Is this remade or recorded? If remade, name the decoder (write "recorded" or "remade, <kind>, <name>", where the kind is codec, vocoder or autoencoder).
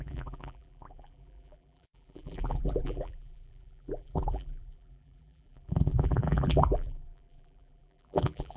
remade, vocoder, BigVGAN v2